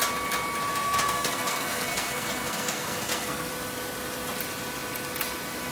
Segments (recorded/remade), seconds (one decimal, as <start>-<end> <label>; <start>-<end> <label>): 0.0-0.7 recorded; 0.7-3.5 remade; 3.5-5.7 recorded